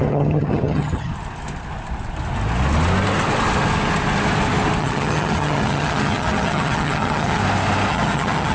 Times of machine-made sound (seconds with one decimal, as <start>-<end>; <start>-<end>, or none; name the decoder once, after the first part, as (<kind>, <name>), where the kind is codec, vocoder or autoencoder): 0.0-1.1 (vocoder, HiFi-GAN); 4.8-7.4; 7.9-8.5